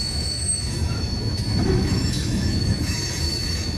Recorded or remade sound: remade